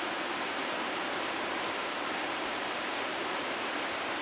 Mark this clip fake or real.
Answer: fake